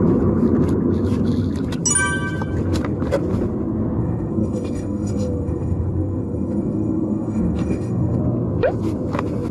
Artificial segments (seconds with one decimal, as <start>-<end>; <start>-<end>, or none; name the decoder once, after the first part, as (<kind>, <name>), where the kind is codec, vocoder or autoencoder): 4.0-8.2 (codec, SNAC)